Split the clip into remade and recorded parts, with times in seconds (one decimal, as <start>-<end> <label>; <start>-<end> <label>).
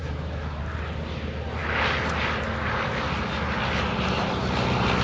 0.0-0.6 remade; 0.6-5.0 recorded